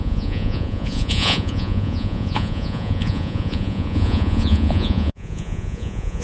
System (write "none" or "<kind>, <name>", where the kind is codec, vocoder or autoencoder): vocoder, Vocos